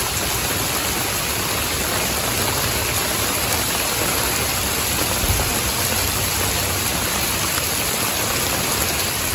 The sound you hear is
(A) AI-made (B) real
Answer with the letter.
B